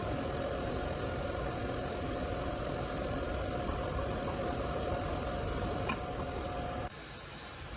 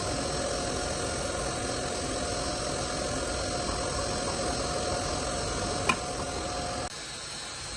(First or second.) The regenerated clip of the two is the first